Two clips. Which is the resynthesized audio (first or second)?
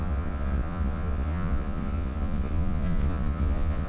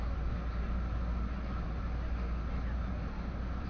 first